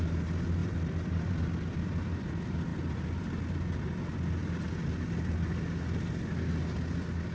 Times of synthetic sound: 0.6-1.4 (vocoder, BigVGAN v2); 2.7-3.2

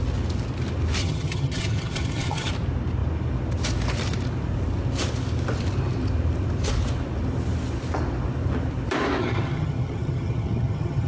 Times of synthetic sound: 1.0-2.5 (vocoder, HiFi-GAN); 9.2-11.1